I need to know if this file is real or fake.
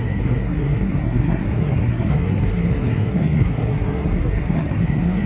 fake